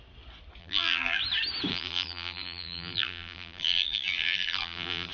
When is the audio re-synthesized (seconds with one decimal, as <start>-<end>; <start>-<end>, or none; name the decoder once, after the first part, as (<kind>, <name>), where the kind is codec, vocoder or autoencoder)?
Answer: 0.6-1.2 (vocoder, BigVGAN v2); 1.7-5.1